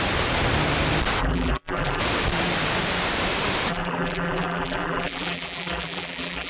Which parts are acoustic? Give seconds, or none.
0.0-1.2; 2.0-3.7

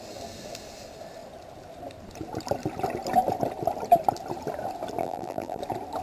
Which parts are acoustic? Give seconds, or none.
0.0-5.0; 5.6-6.0